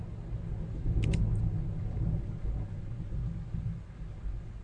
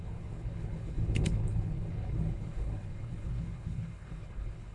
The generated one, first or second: second